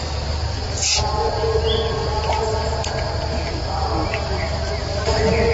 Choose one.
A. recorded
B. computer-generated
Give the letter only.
A